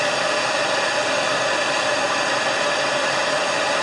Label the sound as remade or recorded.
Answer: recorded